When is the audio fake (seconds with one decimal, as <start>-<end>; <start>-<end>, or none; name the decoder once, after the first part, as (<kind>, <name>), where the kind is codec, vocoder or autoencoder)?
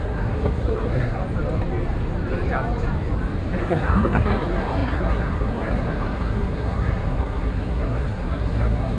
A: 0.0-1.2 (codec, SNAC); 3.6-9.0